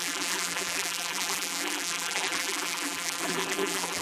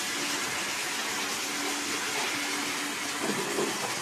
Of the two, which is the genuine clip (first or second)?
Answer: second